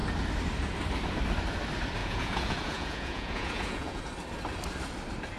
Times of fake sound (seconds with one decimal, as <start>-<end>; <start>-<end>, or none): 2.0-4.0